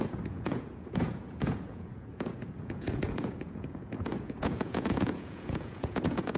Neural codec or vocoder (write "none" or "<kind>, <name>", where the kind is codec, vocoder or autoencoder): vocoder, Vocos